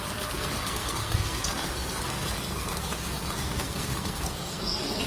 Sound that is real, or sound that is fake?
fake